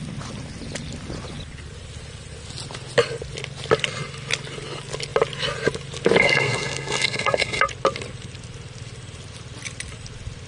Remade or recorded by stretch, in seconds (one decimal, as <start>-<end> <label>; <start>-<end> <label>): 0.0-6.2 recorded; 6.2-7.6 remade; 7.6-10.5 recorded